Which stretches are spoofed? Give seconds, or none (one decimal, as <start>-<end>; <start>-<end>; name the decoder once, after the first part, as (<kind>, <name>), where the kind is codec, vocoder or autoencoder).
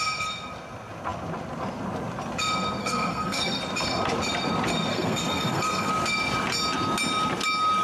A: 2.8-3.6 (codec, SNAC); 4.9-5.9